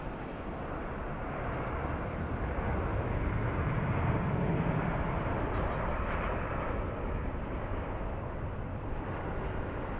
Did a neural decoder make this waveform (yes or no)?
no